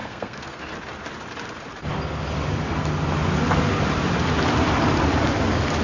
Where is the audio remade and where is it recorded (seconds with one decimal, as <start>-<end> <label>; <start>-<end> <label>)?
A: 0.0-0.6 remade; 0.6-5.8 recorded